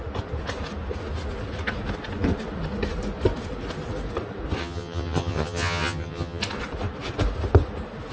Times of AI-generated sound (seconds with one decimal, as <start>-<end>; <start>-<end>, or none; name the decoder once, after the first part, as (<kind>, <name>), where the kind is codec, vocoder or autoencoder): 4.6-6.4 (vocoder, HiFi-GAN)